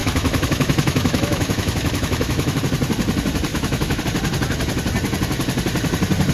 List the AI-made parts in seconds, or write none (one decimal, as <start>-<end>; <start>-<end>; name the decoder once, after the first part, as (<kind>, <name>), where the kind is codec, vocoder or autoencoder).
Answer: 0.0-2.6 (autoencoder, DAC-VAE); 3.5-4.0